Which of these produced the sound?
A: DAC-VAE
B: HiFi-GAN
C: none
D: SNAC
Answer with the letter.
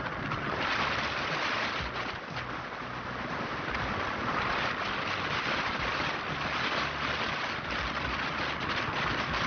C